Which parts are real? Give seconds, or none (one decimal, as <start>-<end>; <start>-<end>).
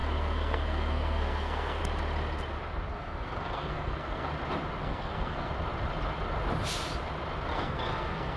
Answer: 1.8-2.9; 4.3-4.8; 5.5-7.5